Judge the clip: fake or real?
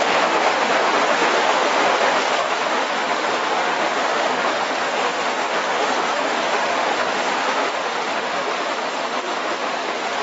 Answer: fake